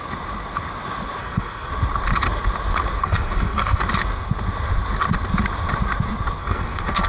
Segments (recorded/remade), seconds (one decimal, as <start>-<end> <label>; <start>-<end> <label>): 0.0-1.2 recorded; 1.2-1.7 remade; 1.7-3.0 recorded; 3.0-3.8 remade; 3.8-6.4 recorded; 6.4-7.1 remade